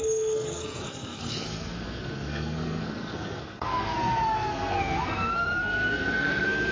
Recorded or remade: remade